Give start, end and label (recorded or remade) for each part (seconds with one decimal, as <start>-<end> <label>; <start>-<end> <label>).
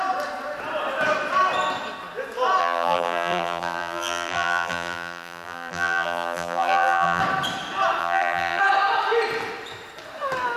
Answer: 0.0-2.6 recorded; 2.6-7.2 remade; 7.2-8.0 recorded; 8.0-8.6 remade; 8.6-10.6 recorded